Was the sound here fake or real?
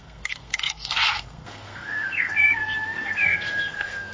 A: fake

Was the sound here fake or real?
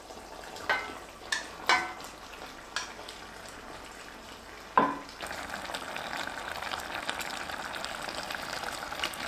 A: real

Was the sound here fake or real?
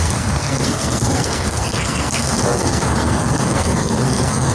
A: fake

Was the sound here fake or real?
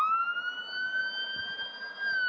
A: real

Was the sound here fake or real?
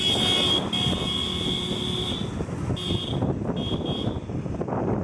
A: real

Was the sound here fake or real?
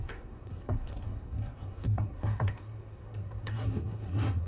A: fake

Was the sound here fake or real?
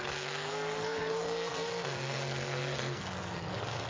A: fake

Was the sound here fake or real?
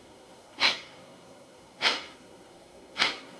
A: fake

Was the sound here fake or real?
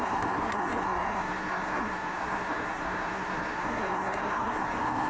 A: fake